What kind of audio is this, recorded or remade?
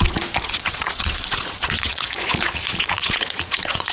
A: remade